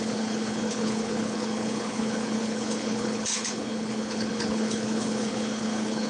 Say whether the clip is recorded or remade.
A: remade